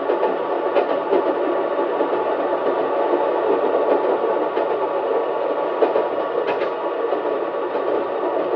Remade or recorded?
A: recorded